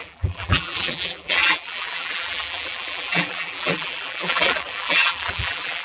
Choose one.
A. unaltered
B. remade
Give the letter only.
B